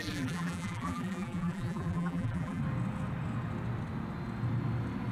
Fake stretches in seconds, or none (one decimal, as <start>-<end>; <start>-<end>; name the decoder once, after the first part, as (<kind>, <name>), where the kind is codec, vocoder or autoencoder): 0.0-2.6 (vocoder, BigVGAN v2)